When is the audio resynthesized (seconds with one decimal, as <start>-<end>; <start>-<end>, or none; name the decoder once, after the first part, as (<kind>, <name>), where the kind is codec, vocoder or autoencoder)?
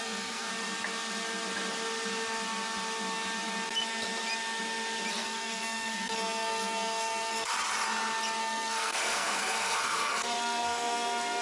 0.0-0.5 (codec, SNAC); 5.1-7.5; 8.4-11.4